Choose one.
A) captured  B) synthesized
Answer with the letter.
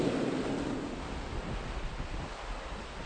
A